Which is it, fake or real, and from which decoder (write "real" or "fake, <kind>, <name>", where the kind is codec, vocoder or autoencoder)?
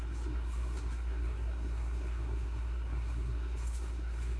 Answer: fake, codec, SNAC